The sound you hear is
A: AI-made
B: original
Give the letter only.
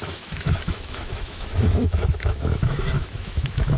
A